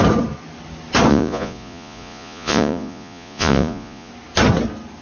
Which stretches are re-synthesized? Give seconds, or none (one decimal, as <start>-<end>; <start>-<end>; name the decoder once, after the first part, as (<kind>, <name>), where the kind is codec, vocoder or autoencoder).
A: 1.1-4.1 (vocoder, Vocos)